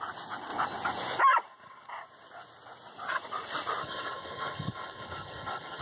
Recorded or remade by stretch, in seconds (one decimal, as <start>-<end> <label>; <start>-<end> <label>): 0.0-3.8 recorded; 3.8-5.8 remade